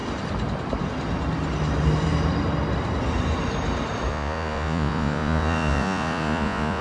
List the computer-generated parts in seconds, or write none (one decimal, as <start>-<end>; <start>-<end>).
4.1-6.8